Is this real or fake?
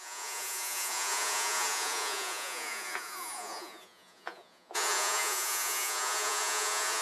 fake